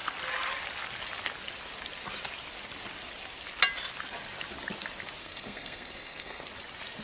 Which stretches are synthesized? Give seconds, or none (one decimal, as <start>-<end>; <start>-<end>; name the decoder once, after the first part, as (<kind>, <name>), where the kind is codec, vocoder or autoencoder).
5.2-6.4 (codec, SNAC)